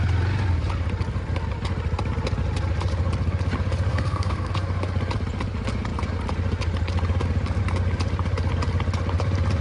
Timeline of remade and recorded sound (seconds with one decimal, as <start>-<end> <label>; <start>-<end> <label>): 0.0-3.9 recorded; 3.9-4.5 remade; 4.5-9.6 recorded